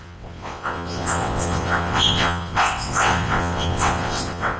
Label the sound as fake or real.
fake